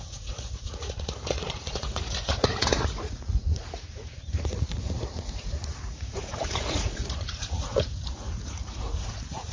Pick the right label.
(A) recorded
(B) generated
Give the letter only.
B